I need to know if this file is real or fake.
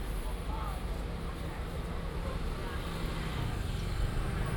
real